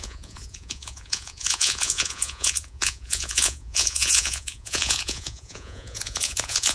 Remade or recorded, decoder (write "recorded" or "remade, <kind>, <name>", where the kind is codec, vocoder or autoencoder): remade, vocoder, Vocos